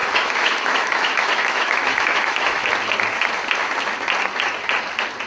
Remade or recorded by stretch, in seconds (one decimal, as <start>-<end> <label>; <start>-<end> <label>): 0.0-2.7 remade; 2.7-5.3 recorded